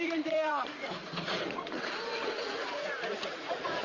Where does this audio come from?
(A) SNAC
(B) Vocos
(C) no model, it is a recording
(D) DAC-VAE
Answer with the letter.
B